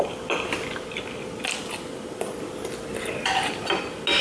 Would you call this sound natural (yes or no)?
yes